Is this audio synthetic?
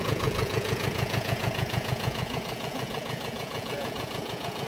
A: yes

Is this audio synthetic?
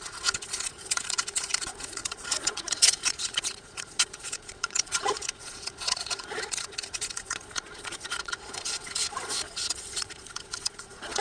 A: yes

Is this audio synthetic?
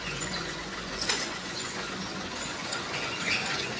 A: yes